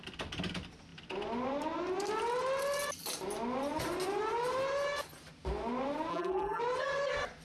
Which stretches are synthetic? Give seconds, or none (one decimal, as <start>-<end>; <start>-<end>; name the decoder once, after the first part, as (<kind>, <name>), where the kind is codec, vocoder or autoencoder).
6.1-6.6 (vocoder, BigVGAN v2)